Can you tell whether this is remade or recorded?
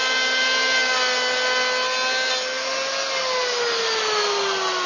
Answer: recorded